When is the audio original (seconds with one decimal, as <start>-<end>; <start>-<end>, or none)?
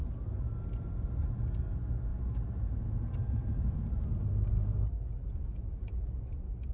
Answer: 0.0-6.7